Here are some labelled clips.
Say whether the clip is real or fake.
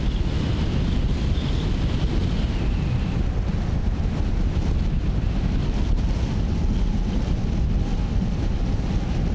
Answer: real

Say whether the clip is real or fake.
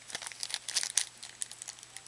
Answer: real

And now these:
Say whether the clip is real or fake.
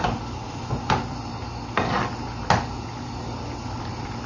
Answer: real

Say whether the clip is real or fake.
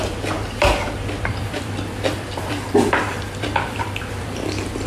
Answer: fake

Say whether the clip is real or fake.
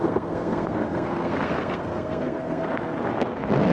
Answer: fake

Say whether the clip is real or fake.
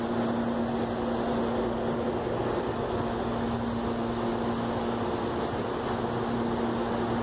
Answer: real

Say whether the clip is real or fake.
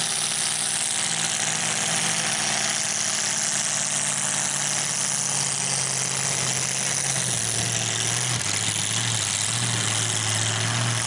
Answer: real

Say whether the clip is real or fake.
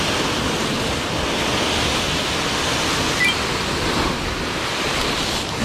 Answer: real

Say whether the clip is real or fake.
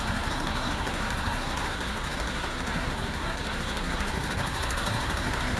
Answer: fake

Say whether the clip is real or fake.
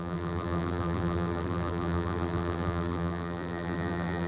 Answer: fake